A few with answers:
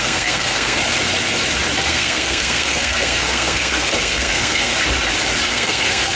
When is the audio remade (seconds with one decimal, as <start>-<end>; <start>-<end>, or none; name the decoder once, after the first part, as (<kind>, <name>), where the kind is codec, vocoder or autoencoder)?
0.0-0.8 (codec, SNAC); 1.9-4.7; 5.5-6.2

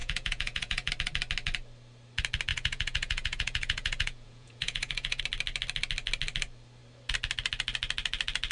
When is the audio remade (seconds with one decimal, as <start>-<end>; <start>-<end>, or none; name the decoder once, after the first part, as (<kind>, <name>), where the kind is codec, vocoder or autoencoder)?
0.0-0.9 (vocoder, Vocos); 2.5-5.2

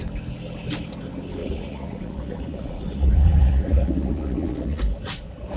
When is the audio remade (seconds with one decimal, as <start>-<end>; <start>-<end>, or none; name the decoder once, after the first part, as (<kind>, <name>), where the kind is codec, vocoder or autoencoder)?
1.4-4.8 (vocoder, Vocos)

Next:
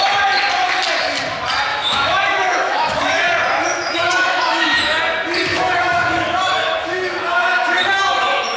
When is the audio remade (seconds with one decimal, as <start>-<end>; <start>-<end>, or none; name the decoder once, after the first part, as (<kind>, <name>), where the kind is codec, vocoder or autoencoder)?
1.7-3.2 (autoencoder, DAC-VAE); 3.6-5.0; 5.5-8.6

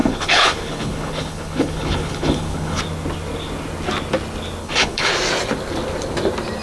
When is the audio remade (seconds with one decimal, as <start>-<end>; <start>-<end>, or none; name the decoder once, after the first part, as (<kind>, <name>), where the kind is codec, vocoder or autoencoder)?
0.0-2.8 (codec, HILCodec); 4.6-5.1

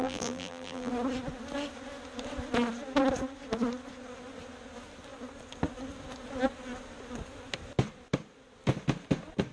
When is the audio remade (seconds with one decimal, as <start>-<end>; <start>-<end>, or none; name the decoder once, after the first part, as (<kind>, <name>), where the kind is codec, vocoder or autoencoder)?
0.0-0.9 (vocoder, BigVGAN v2)

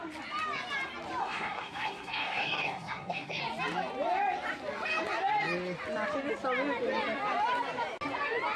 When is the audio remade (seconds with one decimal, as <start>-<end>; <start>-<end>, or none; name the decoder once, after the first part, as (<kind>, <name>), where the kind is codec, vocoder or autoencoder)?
1.2-3.4 (codec, SNAC)